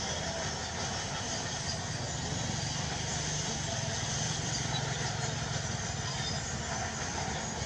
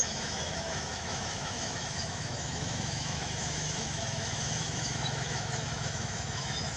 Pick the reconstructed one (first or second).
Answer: second